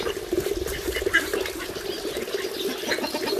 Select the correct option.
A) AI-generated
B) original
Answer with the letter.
B